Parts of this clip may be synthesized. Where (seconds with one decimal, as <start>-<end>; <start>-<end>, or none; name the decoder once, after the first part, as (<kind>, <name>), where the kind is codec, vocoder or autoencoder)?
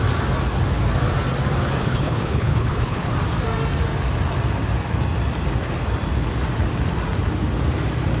1.8-3.1 (codec, HILCodec)